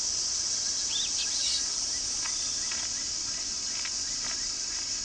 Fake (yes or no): no